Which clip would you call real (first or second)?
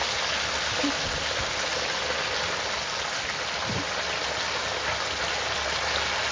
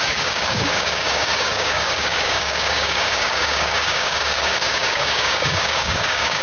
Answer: first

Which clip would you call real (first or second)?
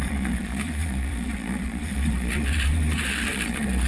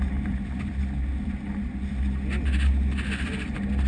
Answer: second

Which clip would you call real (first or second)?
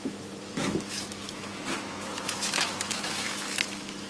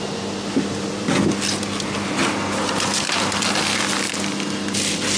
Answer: second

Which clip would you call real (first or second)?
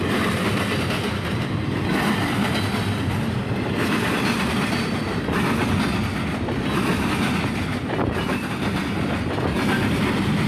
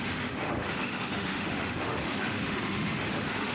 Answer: first